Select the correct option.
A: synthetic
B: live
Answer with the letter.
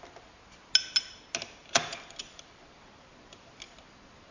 B